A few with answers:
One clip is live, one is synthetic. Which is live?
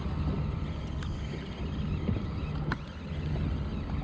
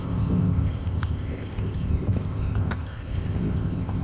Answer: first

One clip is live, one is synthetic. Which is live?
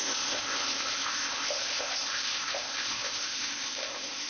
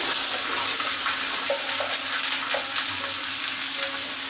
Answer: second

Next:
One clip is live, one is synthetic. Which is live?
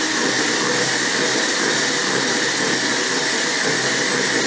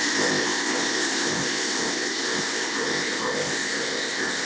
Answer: first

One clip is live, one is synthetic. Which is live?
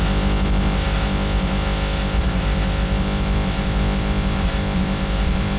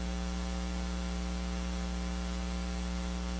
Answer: second